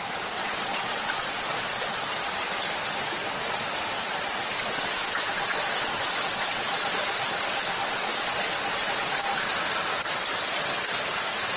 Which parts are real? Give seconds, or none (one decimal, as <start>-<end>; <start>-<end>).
0.0-0.4; 2.0-4.5; 9.5-11.6